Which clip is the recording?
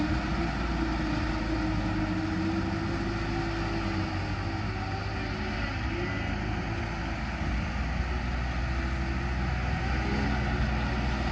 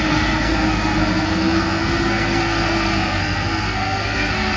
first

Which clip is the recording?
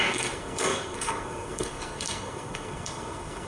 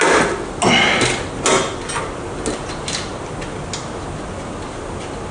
second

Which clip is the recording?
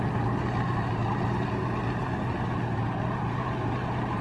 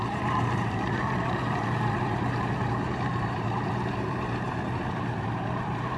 first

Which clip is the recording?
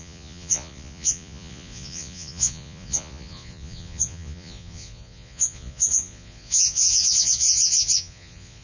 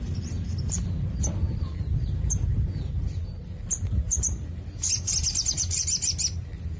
second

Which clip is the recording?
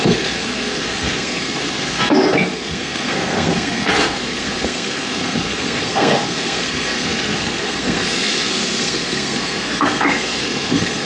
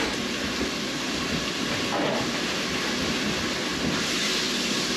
second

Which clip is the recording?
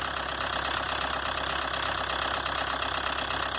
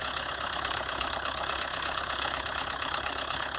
first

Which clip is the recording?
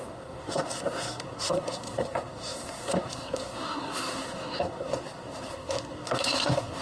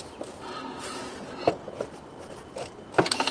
second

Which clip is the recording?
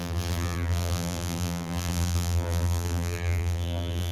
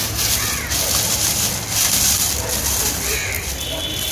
second